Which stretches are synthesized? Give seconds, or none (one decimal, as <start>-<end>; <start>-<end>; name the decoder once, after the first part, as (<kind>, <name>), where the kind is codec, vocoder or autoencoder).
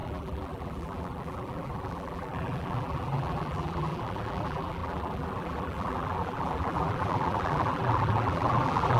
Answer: 0.0-9.0 (vocoder, BigVGAN v2)